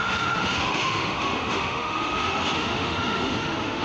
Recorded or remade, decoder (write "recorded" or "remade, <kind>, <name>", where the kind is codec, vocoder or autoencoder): remade, autoencoder, DAC-VAE